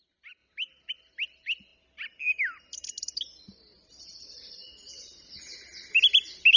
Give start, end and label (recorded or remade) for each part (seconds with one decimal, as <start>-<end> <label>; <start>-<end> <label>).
0.0-6.6 recorded

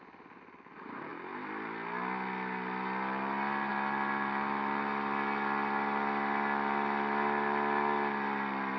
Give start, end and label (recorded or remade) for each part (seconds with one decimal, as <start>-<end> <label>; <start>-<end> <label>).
0.0-8.8 recorded

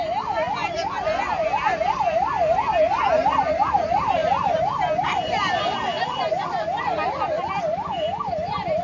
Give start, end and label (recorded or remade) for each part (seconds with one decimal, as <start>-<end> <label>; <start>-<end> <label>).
0.0-8.8 recorded